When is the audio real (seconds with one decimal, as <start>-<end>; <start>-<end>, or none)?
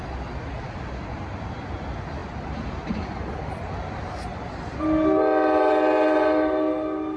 0.0-7.2